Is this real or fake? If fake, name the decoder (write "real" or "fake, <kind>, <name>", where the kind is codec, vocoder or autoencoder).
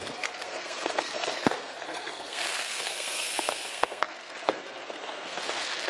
fake, codec, SNAC